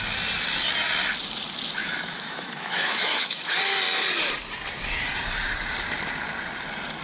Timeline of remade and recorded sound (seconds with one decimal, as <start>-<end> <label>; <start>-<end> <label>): 0.0-1.8 recorded; 1.8-3.5 remade; 3.5-7.0 recorded